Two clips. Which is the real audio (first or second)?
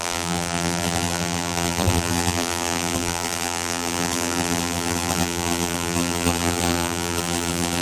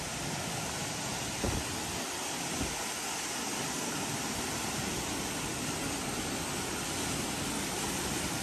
second